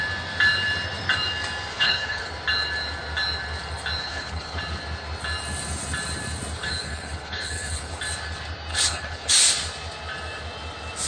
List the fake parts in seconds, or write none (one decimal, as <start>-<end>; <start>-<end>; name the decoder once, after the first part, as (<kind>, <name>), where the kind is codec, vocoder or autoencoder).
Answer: 1.7-2.3 (codec, HILCodec); 4.0-4.6; 6.6-8.0; 8.7-9.3